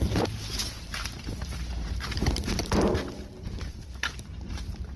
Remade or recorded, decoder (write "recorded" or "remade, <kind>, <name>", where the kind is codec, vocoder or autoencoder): remade, vocoder, BigVGAN v2